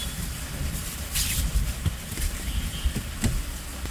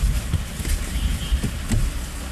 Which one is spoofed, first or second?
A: first